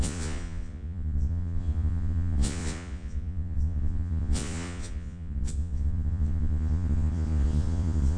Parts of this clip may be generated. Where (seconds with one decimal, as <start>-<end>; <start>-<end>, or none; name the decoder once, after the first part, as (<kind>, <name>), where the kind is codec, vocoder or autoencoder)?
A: 0.0-8.2 (vocoder, Vocos)